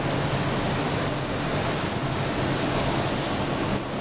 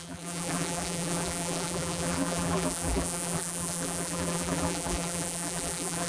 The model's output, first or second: second